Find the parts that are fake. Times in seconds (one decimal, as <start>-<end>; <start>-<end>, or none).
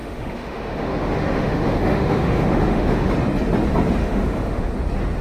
0.0-3.1; 4.0-4.7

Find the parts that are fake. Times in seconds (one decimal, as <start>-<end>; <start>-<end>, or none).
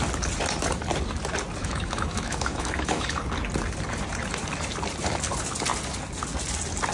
1.6-3.2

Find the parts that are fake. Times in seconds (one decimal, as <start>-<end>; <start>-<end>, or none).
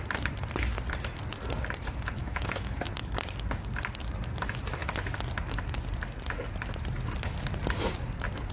2.2-2.8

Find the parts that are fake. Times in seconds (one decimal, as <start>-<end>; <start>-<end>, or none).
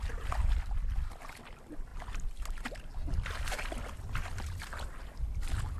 none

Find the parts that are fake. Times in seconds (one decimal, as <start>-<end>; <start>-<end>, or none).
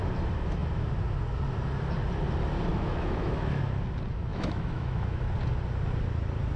2.7-3.6; 4.3-5.3